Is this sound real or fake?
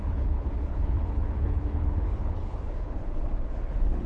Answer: fake